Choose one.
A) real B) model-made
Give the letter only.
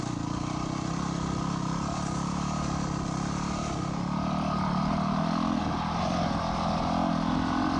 A